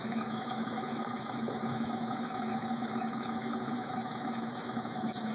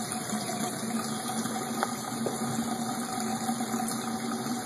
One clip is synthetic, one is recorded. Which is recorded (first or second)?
second